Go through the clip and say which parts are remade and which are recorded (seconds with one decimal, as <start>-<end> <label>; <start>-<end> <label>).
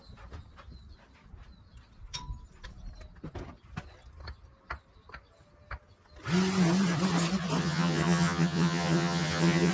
0.0-7.6 recorded; 7.6-9.7 remade